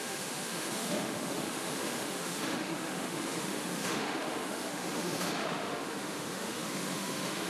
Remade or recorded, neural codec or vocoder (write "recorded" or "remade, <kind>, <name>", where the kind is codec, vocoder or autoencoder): remade, autoencoder, DAC-VAE